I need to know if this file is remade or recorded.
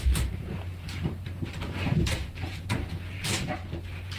remade